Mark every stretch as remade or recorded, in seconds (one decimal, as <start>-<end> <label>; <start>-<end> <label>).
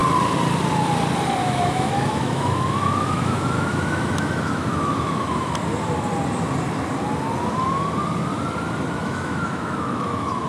0.0-1.4 recorded; 1.4-5.5 remade; 5.5-9.0 recorded; 9.0-10.5 remade